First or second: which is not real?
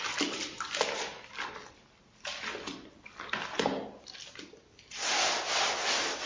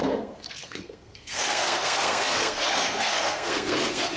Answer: second